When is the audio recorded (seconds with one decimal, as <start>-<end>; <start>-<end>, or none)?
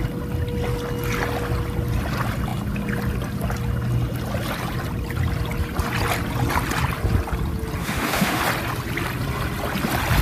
0.0-7.8; 8.4-10.2